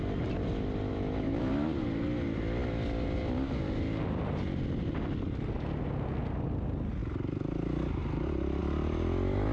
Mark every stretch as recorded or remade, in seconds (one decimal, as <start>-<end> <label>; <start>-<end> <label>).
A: 0.0-0.9 recorded; 0.9-1.4 remade; 1.4-9.5 recorded